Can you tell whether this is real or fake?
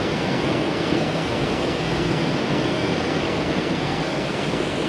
fake